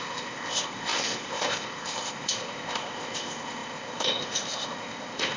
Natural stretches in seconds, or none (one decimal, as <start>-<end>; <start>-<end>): none